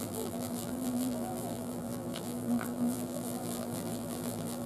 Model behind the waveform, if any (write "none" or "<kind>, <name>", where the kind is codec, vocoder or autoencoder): vocoder, BigVGAN v2